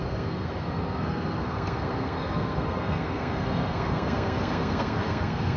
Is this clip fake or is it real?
fake